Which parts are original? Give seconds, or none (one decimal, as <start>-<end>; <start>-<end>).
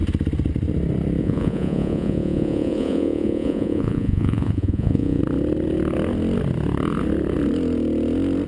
0.0-1.2; 5.2-8.5